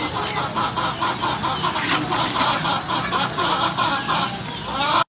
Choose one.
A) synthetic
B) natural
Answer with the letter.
B